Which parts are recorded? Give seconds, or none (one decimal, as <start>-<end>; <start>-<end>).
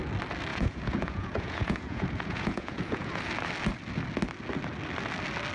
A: 0.0-0.5; 3.2-5.5